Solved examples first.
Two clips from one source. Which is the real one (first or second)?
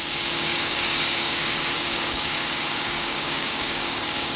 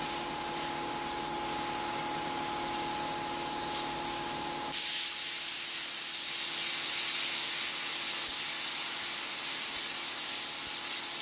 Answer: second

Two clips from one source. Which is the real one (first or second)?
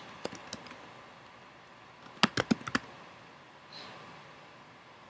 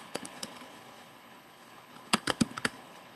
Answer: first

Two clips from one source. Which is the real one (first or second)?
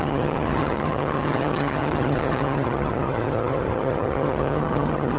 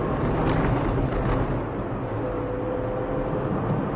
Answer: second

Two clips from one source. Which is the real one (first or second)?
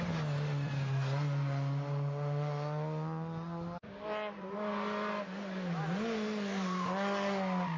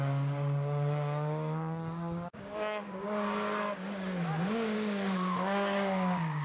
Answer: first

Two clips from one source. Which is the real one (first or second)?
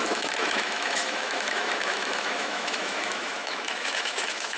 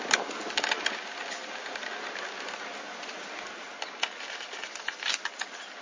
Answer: second